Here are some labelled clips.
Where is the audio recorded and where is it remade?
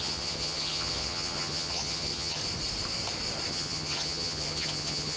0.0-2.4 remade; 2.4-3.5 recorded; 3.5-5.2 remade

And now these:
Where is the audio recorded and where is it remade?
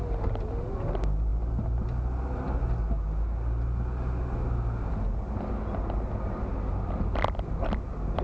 0.0-8.2 recorded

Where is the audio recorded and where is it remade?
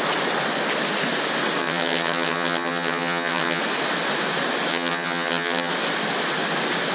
0.0-1.6 recorded; 1.6-3.6 remade; 3.6-4.7 recorded; 4.7-5.7 remade; 5.7-6.9 recorded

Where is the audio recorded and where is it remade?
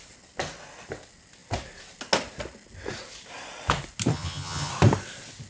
0.0-4.1 recorded; 4.1-4.7 remade; 4.7-5.5 recorded